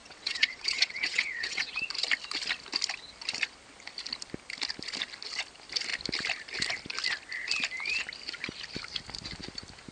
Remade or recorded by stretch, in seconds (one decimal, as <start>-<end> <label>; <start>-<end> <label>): 0.0-1.7 remade; 1.7-9.9 recorded